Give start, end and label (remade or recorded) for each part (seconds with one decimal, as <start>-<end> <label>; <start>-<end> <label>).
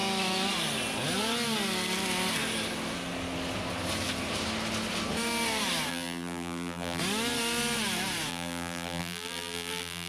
0.0-5.9 recorded; 5.9-7.0 remade; 7.0-8.3 recorded; 8.3-10.1 remade